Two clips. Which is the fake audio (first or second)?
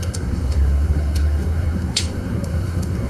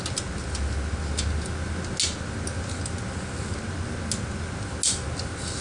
first